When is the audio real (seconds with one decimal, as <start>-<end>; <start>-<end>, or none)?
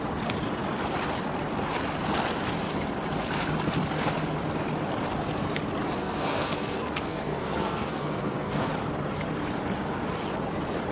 0.0-6.0; 8.7-10.9